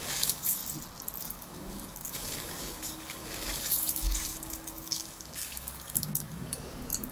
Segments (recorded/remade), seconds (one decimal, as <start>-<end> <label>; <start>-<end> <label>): 0.0-0.6 remade; 0.6-1.2 recorded; 1.2-7.1 remade